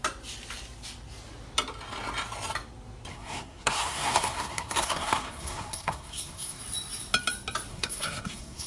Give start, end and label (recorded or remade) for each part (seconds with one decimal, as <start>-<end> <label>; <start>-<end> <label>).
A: 0.0-3.1 recorded; 3.1-6.6 remade; 6.6-7.7 recorded; 7.7-8.7 remade